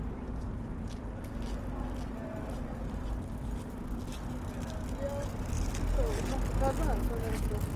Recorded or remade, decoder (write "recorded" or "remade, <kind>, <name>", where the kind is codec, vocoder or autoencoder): recorded